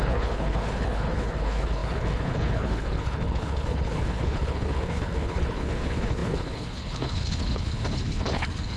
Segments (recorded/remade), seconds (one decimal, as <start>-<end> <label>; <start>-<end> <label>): 0.0-8.8 remade